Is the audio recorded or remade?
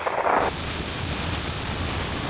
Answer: recorded